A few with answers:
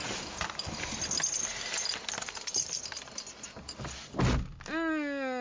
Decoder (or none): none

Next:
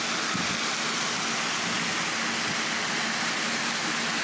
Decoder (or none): none